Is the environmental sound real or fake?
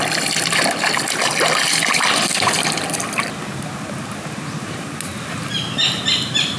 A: real